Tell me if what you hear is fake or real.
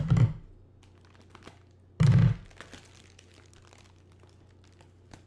real